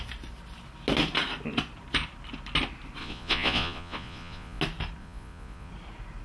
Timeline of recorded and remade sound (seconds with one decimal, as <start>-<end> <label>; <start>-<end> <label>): 0.0-3.0 recorded; 3.0-4.6 remade; 4.6-5.0 recorded; 5.0-5.7 remade; 5.7-6.2 recorded